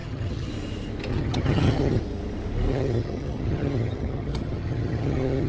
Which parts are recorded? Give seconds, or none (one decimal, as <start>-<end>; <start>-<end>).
0.5-1.1; 2.0-2.7